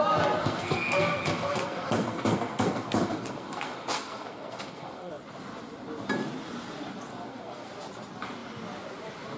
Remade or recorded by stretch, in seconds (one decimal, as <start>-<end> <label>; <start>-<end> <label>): 0.0-0.4 recorded; 0.4-5.1 remade; 5.1-7.1 recorded; 7.1-7.7 remade; 7.7-9.4 recorded